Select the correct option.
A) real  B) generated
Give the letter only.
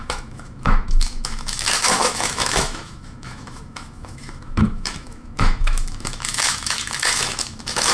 B